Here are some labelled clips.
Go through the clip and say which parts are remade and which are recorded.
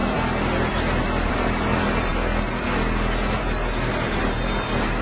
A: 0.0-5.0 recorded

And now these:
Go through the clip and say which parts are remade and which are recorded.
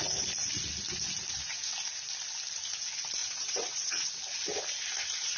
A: 0.0-3.2 recorded; 3.2-4.2 remade; 4.2-5.4 recorded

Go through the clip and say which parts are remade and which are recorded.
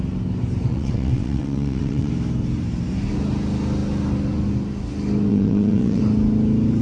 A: 0.0-0.7 recorded; 0.7-2.1 remade; 2.1-5.3 recorded; 5.3-6.0 remade; 6.0-6.8 recorded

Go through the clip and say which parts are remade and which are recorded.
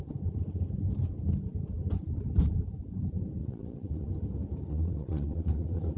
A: 0.0-3.4 recorded; 3.4-4.1 remade; 4.1-4.7 recorded; 4.7-6.0 remade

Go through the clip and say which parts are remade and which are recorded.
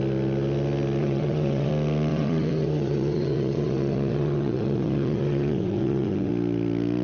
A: 0.0-1.0 recorded; 1.0-1.7 remade; 1.7-2.1 recorded; 2.1-6.3 remade; 6.3-7.0 recorded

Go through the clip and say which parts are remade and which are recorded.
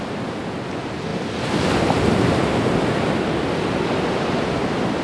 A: 0.0-5.0 recorded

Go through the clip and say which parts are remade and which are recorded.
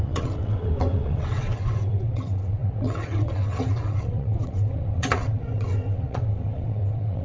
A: 0.0-7.2 remade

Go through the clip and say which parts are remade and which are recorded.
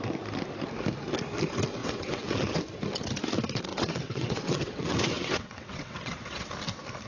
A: 0.0-1.8 recorded; 1.8-2.6 remade; 2.6-3.7 recorded; 3.7-6.5 remade; 6.5-7.1 recorded